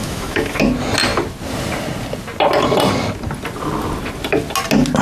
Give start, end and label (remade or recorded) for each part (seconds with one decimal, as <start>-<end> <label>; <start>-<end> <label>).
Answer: 0.0-0.6 remade; 0.6-5.0 recorded